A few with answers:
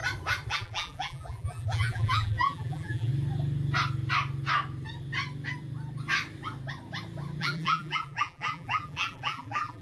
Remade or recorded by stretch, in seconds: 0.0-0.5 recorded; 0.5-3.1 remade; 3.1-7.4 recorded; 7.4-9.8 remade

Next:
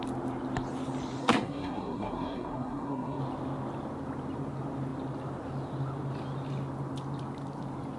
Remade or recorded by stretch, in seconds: 0.0-1.2 recorded; 1.2-3.2 remade; 3.2-8.0 recorded

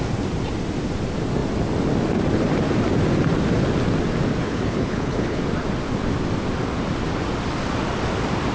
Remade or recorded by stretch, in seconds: 0.0-4.4 recorded; 4.4-5.4 remade; 5.4-8.5 recorded

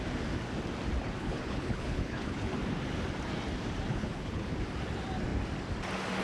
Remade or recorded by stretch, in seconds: 0.0-1.2 recorded; 1.2-2.5 remade; 2.5-3.9 recorded; 3.9-4.5 remade; 4.5-6.2 recorded

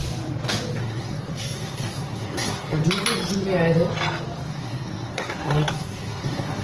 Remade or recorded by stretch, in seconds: 0.0-0.8 recorded; 0.8-2.8 remade; 2.8-4.5 recorded; 4.5-6.6 remade

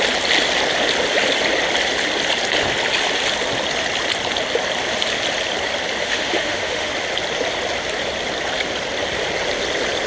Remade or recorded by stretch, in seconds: 0.0-6.0 recorded; 6.0-6.9 remade; 6.9-10.1 recorded